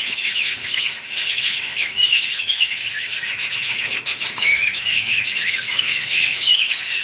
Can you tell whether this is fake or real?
fake